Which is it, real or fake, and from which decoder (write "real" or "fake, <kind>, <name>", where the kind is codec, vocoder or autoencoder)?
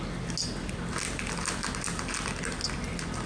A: real